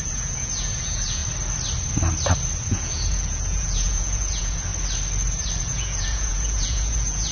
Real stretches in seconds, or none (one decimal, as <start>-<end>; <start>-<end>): 1.2-2.7; 4.7-5.6